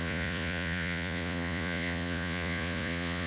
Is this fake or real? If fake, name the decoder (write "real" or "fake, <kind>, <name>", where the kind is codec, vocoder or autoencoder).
fake, vocoder, Vocos